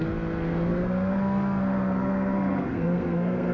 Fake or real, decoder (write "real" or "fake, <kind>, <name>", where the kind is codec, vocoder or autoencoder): fake, codec, SNAC